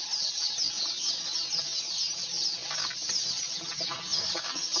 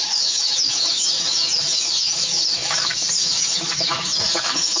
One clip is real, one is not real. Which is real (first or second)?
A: first